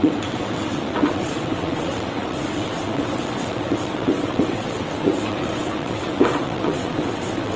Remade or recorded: remade